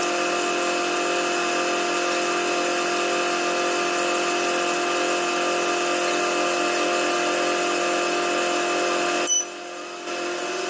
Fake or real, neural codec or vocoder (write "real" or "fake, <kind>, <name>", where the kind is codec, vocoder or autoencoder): real